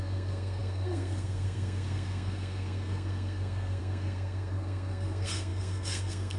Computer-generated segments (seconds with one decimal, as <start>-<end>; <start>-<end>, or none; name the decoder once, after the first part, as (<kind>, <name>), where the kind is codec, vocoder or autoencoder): 0.0-6.4 (codec, SNAC)